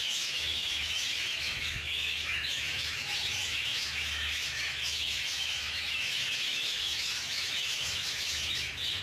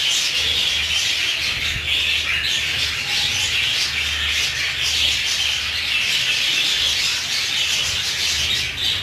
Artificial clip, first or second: first